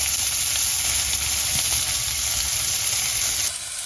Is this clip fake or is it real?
real